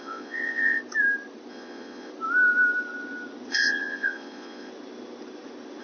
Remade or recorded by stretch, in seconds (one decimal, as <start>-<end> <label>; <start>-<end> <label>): 0.0-0.8 remade; 0.8-1.5 recorded; 1.5-2.1 remade; 2.1-3.5 recorded; 3.5-4.7 remade; 4.7-5.8 recorded